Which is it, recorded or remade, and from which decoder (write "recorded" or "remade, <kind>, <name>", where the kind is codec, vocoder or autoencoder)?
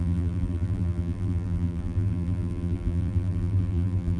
remade, vocoder, BigVGAN v2